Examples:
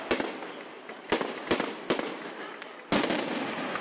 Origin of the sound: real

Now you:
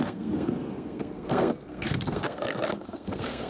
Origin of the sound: fake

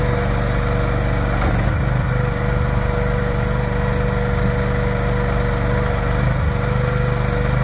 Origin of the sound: real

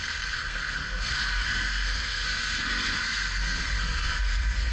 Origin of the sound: fake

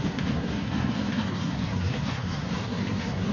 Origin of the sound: fake